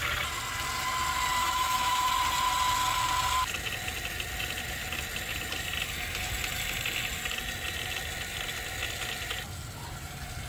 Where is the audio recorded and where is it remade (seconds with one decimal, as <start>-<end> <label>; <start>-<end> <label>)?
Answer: 0.0-1.4 recorded; 1.4-2.1 remade; 2.1-10.5 recorded